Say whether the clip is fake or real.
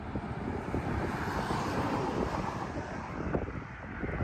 real